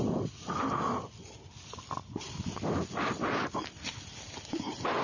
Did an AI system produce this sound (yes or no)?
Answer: no